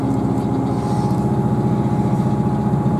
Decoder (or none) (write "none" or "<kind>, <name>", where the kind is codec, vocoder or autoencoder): none